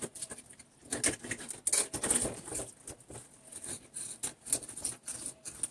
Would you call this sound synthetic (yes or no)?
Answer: no